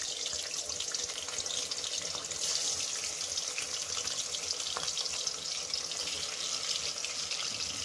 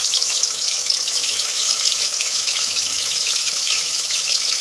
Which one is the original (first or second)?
first